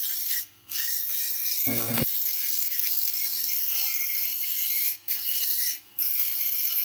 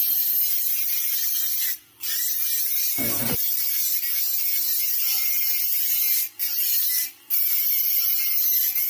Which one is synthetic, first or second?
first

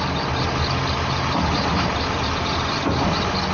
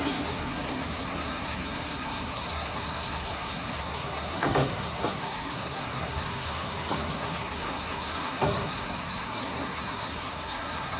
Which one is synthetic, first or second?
second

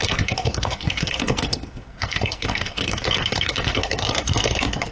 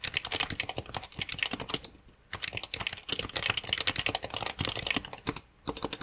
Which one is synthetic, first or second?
first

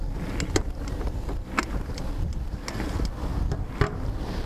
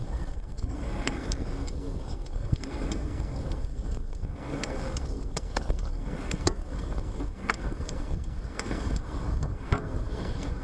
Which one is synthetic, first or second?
second